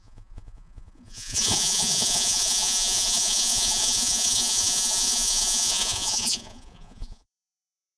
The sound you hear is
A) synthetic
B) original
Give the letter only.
A